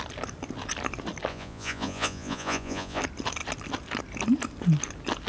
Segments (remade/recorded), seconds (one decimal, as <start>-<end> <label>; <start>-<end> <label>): 0.0-1.3 recorded; 1.3-3.0 remade; 3.0-5.3 recorded